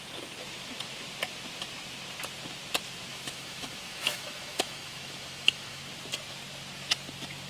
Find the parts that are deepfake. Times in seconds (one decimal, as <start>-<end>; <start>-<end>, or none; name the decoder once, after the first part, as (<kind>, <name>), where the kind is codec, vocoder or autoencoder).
3.1-5.8 (autoencoder, DAC-VAE)